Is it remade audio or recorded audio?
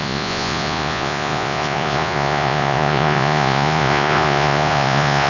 remade